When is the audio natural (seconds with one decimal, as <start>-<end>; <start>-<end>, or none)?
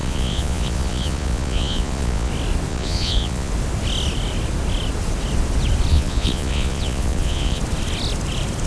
2.3-2.7; 3.5-5.9; 7.6-8.7